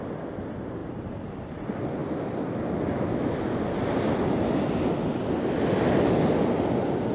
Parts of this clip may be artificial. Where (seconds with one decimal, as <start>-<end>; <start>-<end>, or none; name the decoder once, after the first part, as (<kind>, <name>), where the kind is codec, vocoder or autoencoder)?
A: none